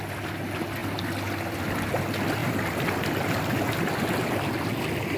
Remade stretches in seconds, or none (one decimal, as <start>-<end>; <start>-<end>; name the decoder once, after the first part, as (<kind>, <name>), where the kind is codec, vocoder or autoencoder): 2.4-4.2 (vocoder, BigVGAN v2)